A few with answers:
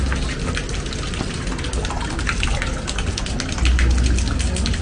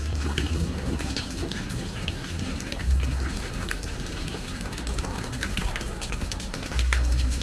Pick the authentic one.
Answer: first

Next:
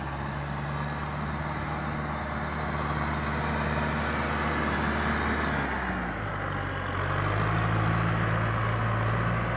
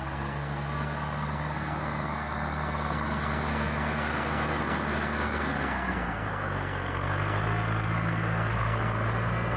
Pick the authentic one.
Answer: first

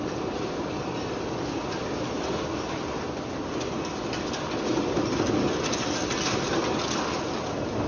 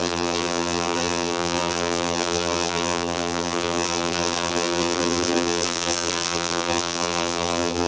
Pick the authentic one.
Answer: first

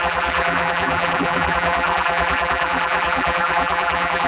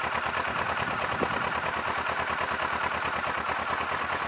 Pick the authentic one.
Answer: second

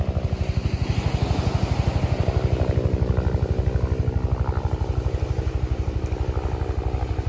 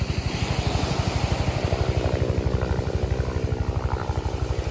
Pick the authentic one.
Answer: first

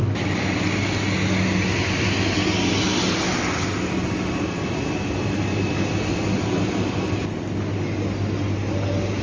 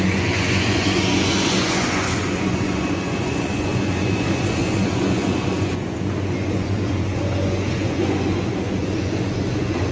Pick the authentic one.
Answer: first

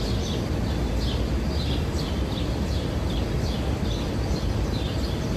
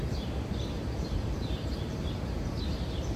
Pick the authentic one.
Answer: first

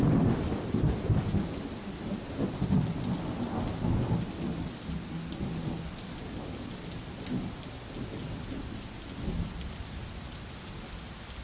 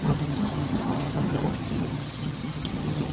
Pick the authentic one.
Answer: first